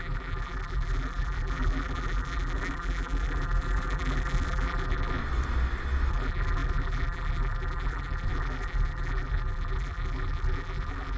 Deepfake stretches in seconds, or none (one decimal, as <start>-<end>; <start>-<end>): 0.0-5.2; 6.1-11.2